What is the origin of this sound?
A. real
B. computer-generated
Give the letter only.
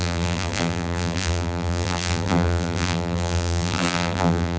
B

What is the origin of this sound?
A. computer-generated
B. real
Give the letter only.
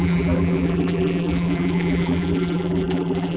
A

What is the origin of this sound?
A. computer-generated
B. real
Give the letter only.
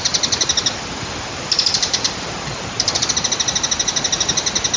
B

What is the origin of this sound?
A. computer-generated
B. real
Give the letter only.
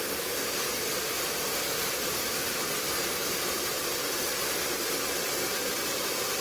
A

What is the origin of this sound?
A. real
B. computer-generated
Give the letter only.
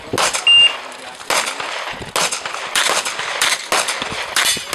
A